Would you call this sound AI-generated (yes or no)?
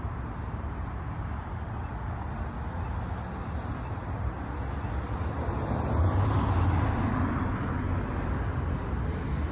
no